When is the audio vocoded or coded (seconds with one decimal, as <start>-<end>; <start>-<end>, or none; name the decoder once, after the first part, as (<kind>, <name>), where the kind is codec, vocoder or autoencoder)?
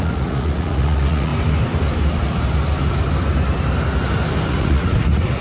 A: 0.0-1.3 (vocoder, Vocos); 4.5-5.4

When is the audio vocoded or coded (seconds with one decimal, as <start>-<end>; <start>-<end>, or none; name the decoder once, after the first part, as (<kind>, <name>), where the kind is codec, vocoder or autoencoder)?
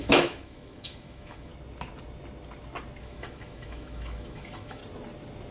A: 0.0-1.5 (autoencoder, DAC-VAE); 3.0-4.8